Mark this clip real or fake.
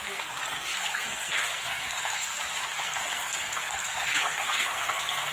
fake